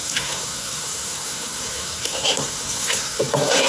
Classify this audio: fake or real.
fake